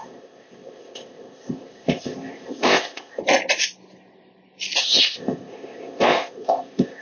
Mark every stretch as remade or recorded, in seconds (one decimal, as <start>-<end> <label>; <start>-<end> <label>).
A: 0.0-3.2 remade; 3.2-4.8 recorded; 4.8-7.0 remade